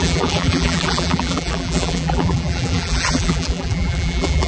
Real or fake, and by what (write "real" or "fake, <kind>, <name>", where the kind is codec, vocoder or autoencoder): fake, vocoder, BigVGAN v2